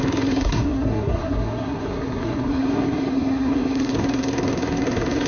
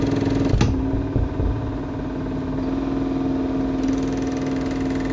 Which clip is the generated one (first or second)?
first